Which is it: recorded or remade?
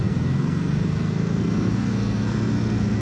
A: remade